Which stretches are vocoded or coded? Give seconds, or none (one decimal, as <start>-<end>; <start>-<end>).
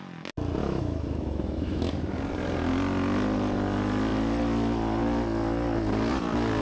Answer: 0.6-1.9